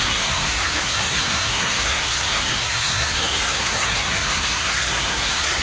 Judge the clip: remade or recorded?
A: remade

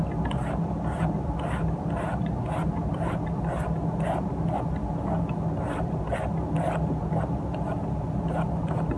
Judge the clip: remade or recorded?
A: recorded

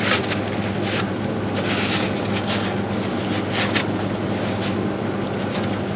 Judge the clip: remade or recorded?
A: recorded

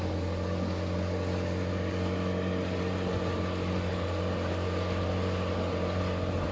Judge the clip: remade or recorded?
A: recorded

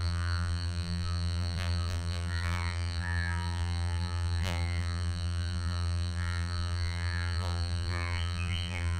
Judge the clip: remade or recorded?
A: remade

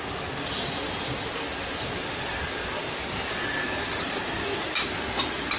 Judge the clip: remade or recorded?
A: recorded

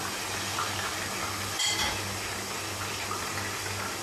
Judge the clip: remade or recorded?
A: recorded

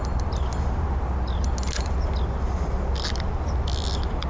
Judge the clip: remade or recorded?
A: recorded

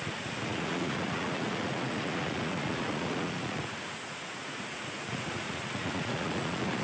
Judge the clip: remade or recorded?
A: remade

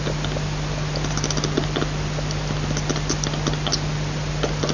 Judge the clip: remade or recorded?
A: recorded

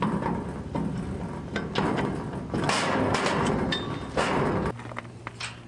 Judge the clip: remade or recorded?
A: recorded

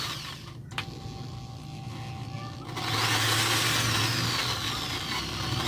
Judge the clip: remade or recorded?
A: recorded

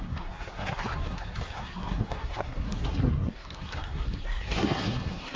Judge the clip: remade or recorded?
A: remade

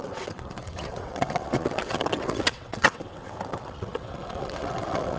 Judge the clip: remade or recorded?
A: remade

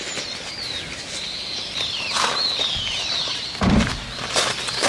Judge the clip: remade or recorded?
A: remade